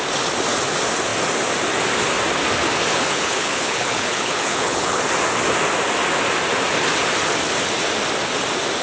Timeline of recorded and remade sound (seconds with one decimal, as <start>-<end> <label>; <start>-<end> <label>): 0.0-2.9 recorded; 2.9-5.0 remade; 5.0-8.8 recorded